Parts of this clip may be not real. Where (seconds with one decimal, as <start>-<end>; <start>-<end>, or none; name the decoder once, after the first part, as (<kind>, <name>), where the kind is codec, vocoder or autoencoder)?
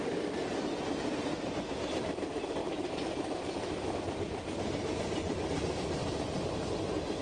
2.6-3.3 (vocoder, BigVGAN v2); 6.0-6.7